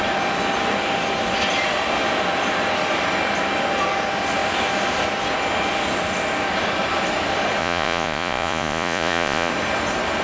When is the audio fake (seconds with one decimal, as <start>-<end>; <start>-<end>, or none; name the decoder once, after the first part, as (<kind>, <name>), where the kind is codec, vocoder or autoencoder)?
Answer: 7.6-9.5 (vocoder, Vocos)